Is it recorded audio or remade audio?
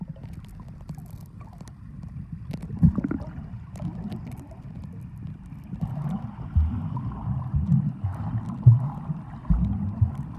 recorded